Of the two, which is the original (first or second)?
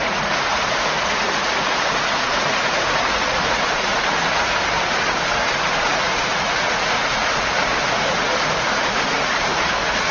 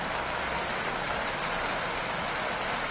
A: second